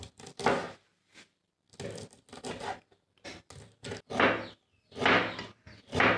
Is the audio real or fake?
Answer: real